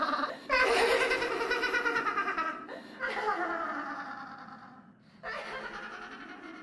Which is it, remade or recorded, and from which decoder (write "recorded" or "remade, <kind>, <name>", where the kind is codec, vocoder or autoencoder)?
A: recorded